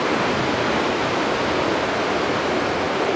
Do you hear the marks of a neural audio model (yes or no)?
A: no